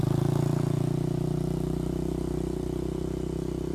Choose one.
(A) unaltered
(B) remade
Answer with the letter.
A